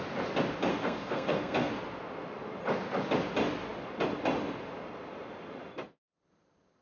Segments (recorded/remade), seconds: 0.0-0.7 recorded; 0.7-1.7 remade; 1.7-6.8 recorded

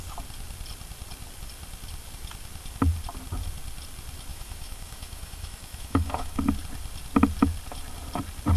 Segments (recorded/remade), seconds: 0.0-4.3 recorded; 4.3-6.4 remade; 6.4-8.6 recorded